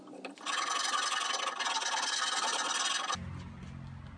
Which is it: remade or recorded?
recorded